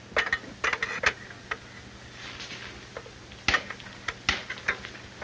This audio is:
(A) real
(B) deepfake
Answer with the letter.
A